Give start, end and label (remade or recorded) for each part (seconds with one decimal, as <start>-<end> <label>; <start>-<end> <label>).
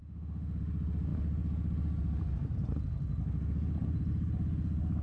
0.0-0.6 remade; 0.6-5.0 recorded